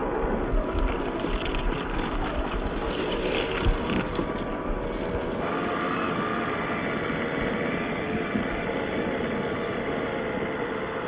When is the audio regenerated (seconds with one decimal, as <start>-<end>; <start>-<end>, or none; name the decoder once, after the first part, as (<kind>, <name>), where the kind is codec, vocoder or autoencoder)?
none